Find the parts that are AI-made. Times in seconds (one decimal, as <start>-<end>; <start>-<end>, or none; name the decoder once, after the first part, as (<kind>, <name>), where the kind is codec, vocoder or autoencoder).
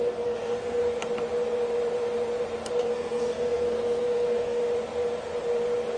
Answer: 0.0-0.8 (codec, SNAC); 2.8-4.6